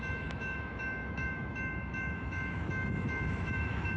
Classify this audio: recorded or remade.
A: remade